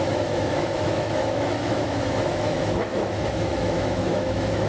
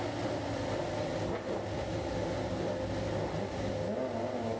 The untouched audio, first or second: second